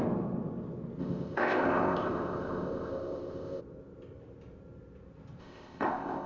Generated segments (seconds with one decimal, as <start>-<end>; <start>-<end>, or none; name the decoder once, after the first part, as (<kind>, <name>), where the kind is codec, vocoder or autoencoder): 1.0-3.6 (codec, ZipCodec); 5.4-6.3